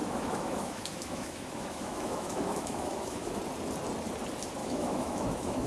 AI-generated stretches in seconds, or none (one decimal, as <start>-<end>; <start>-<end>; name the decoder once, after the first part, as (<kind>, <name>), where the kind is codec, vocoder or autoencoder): 0.0-3.4 (autoencoder, DAC-VAE); 4.6-5.7